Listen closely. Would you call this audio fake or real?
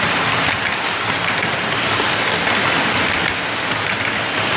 real